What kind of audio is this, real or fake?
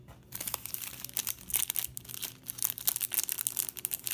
real